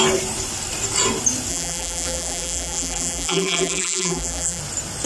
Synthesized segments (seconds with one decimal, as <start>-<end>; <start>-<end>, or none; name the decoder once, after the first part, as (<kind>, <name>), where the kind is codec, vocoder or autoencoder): 1.5-4.6 (vocoder, BigVGAN v2)